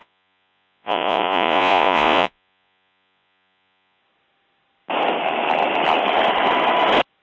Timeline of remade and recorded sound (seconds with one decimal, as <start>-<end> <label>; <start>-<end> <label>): 0.0-4.0 remade; 4.0-7.2 recorded